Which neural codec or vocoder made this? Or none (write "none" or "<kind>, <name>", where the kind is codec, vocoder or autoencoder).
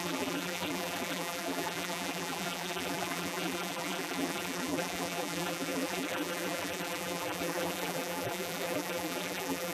vocoder, BigVGAN v2